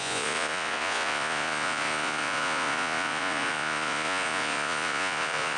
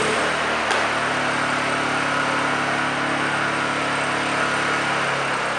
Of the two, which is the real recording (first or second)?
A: second